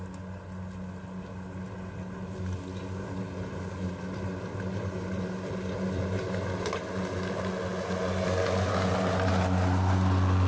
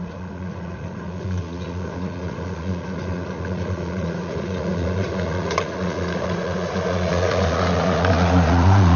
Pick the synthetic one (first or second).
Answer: second